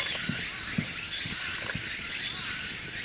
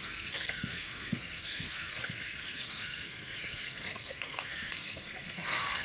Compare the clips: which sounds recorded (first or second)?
first